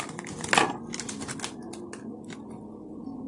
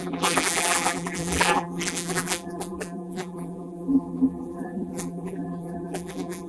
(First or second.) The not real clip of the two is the second